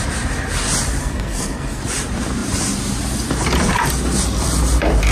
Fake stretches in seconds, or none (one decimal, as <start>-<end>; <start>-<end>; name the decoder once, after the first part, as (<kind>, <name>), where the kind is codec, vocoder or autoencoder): 1.0-1.8 (codec, SNAC)